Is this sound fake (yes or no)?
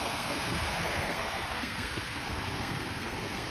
yes